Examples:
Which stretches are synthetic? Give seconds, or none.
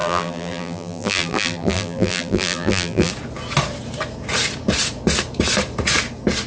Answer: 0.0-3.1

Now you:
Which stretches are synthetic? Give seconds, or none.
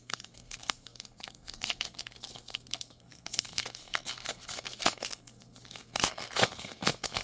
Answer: 0.0-7.2